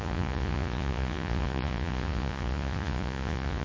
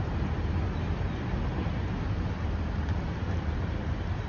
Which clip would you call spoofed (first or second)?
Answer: first